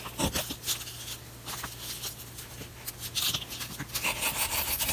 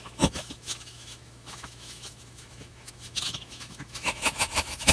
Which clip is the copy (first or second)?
second